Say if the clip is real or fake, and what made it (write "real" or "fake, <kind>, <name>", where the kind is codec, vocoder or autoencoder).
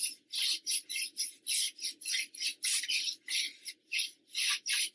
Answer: real